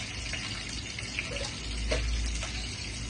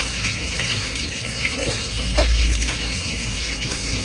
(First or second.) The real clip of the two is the first